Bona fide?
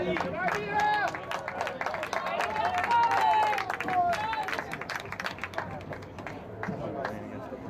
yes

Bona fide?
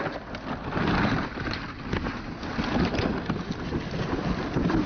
yes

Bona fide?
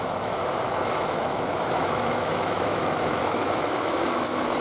no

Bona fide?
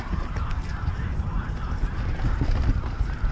yes